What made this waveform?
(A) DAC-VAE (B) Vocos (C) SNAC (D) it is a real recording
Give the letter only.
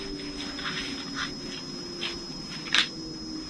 D